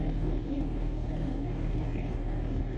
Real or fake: fake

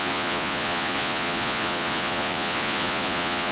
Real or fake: fake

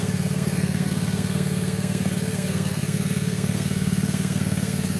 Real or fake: fake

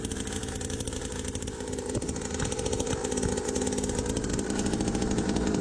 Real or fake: real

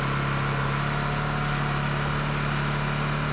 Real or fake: real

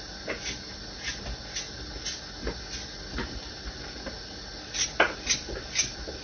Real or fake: real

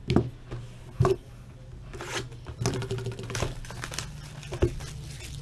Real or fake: real